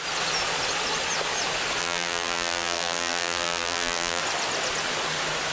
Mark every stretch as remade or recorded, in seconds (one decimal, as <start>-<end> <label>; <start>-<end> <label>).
0.0-1.8 recorded; 1.8-4.2 remade; 4.2-5.5 recorded